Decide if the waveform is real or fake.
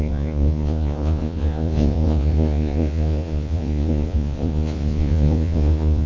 fake